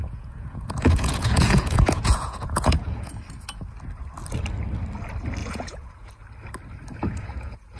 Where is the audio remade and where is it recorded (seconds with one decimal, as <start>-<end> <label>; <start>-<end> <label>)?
0.0-3.1 remade; 3.1-5.4 recorded; 5.4-6.1 remade; 6.1-7.0 recorded; 7.0-7.8 remade